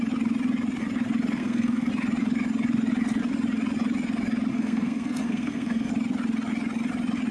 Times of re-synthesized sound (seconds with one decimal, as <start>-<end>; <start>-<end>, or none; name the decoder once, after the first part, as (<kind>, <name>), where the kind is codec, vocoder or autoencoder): 1.4-1.9 (codec, SNAC); 4.5-5.9